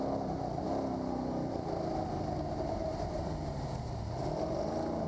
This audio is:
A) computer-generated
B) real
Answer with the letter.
B